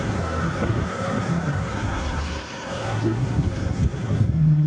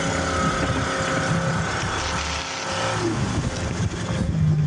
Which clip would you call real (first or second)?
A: second